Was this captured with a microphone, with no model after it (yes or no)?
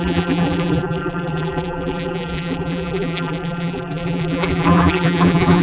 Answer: no